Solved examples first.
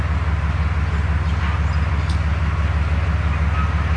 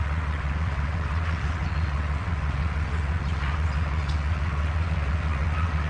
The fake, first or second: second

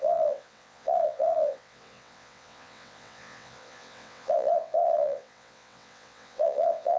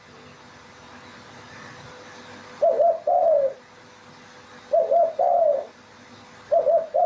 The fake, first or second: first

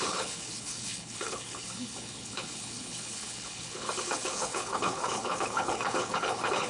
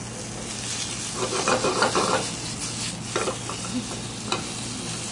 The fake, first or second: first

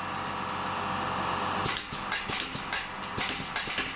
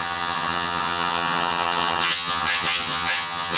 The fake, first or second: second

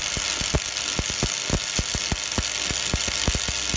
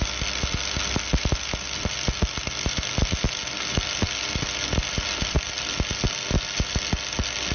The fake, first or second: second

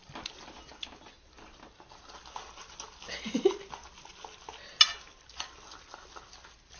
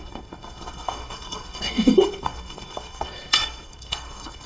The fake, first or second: second